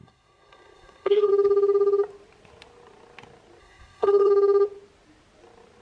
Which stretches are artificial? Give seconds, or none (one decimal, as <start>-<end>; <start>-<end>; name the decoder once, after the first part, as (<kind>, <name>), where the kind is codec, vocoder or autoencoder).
0.0-1.3 (codec, SNAC); 3.6-4.3

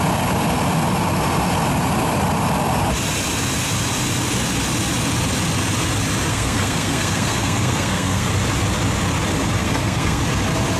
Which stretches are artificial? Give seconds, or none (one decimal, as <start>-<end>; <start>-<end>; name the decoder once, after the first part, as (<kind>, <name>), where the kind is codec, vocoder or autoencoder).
6.3-8.3 (codec, SNAC); 9.6-10.2

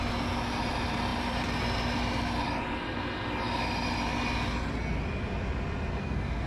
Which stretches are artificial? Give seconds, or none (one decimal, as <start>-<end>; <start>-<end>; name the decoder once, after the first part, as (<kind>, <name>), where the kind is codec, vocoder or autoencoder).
6.0-6.5 (codec, SNAC)

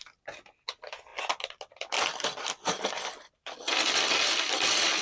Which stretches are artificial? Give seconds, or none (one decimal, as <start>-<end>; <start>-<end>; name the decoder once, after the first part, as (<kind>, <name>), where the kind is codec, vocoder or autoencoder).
none

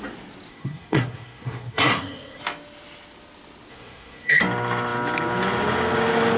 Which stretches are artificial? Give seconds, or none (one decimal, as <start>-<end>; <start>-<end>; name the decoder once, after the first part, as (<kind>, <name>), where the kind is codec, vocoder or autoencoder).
0.5-2.4 (codec, SNAC); 3.7-4.4

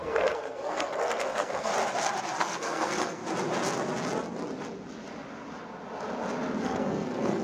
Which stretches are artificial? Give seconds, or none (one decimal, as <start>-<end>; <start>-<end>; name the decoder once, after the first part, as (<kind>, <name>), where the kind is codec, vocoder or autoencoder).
0.0-1.7 (codec, SNAC); 2.4-3.2; 6.6-7.4

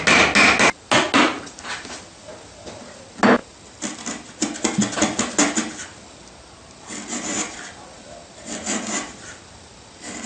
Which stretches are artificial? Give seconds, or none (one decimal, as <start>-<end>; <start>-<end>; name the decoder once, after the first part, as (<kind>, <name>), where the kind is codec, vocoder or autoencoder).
none

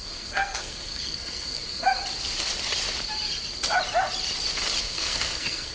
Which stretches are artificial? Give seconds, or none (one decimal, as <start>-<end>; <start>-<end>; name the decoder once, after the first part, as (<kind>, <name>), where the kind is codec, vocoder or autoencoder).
0.0-2.0 (codec, SNAC); 4.8-5.7